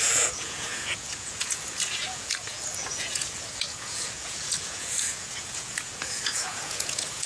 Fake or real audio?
fake